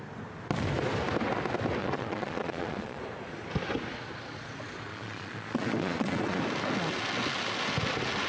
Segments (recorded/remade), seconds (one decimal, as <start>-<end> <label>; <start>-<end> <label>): 0.0-1.8 recorded; 1.8-3.0 remade; 3.0-4.9 recorded; 4.9-6.4 remade; 6.4-8.3 recorded